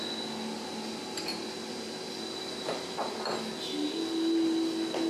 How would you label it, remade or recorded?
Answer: recorded